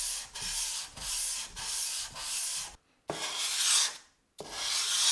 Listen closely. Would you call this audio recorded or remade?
recorded